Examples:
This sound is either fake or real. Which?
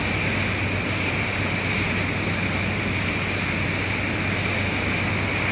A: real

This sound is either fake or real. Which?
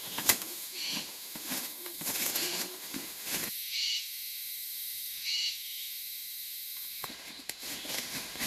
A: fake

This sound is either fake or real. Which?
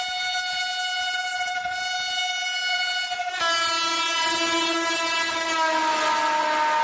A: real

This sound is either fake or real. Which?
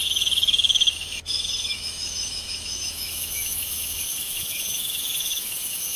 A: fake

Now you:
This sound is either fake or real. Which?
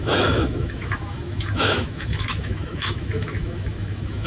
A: fake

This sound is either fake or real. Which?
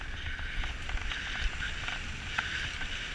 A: real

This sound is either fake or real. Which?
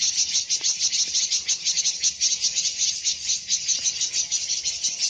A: real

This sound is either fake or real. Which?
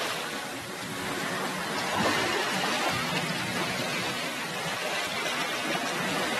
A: real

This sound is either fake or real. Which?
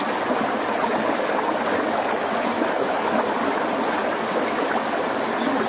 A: real